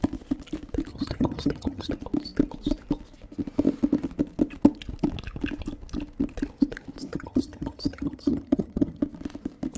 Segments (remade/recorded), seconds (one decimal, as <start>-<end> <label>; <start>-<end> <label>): 0.0-0.9 recorded; 0.9-1.9 remade; 1.9-7.1 recorded; 7.1-9.0 remade; 9.0-9.8 recorded